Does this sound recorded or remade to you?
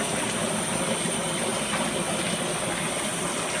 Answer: recorded